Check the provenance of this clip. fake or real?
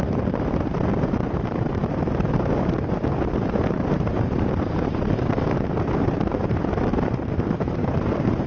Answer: fake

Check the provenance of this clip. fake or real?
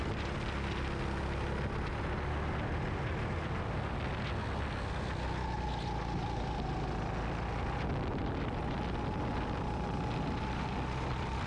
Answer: real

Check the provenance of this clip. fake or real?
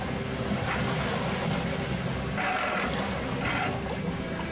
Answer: real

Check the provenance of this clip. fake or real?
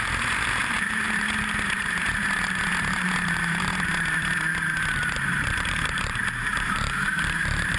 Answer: fake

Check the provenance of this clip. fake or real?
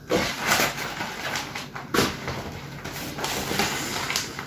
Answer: real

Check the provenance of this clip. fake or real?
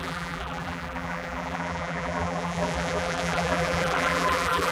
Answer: fake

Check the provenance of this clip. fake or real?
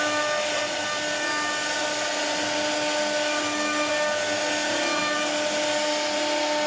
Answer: real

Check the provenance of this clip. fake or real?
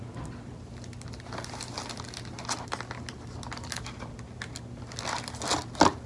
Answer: real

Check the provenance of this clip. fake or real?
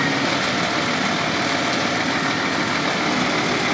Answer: real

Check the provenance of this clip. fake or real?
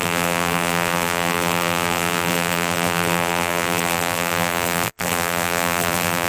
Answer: fake